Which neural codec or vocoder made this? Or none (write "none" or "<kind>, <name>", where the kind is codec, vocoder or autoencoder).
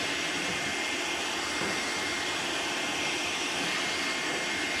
vocoder, BigVGAN v2